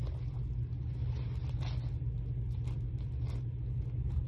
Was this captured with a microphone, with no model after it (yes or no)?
yes